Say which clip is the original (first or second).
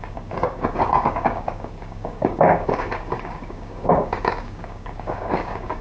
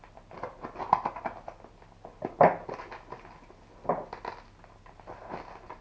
second